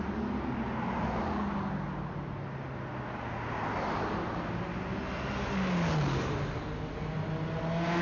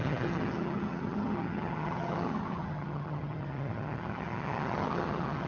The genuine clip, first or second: first